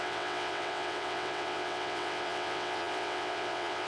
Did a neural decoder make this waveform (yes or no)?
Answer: yes